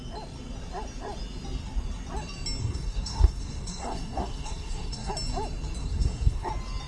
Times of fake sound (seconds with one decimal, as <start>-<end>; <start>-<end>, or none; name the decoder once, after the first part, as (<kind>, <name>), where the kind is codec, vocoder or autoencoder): 2.6-5.1 (codec, SNAC); 5.8-6.5